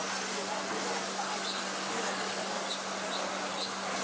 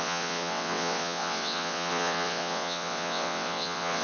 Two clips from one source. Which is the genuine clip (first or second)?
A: first